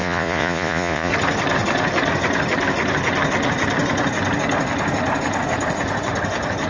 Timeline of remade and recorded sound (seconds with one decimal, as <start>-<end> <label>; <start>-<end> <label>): 0.0-1.1 remade; 1.1-6.7 recorded